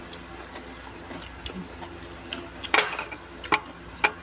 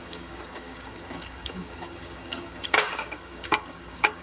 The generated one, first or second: second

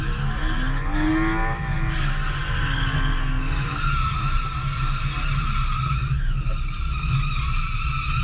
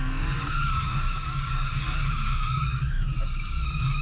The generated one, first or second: second